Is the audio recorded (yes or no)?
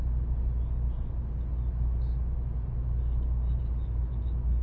yes